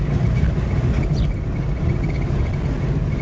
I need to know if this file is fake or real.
real